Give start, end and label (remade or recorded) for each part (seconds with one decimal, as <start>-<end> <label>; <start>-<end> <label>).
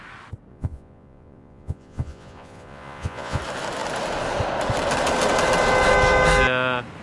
0.0-0.5 recorded; 0.5-3.4 remade; 3.4-7.0 recorded